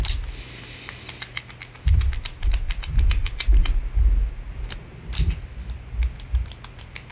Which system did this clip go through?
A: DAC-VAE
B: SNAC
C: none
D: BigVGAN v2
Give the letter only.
C